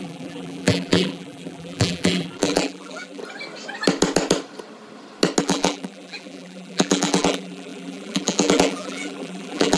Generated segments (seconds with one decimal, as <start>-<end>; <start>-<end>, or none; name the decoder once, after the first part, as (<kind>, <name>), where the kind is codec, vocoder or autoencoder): 0.0-3.2 (vocoder, BigVGAN v2); 5.4-9.8